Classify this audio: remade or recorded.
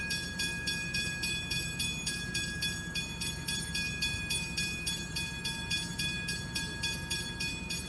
remade